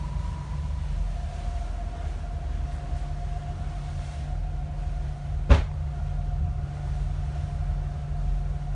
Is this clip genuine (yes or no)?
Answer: yes